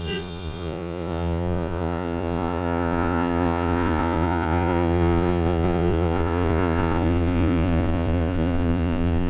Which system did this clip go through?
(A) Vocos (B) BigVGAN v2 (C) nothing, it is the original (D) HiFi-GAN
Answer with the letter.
A